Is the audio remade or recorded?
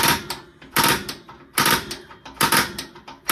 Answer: remade